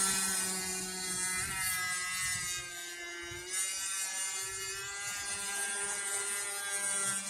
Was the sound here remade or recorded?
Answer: recorded